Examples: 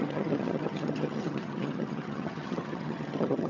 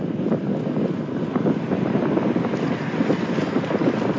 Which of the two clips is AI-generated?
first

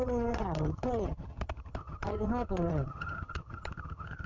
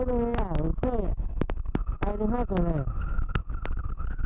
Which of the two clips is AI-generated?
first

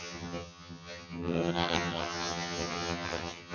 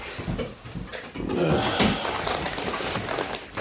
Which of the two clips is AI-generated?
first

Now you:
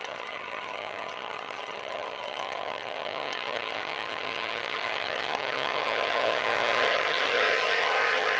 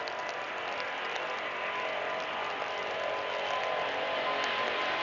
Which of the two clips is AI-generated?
first